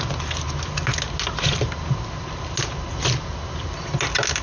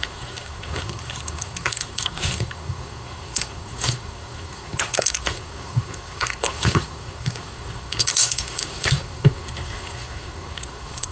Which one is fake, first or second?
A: second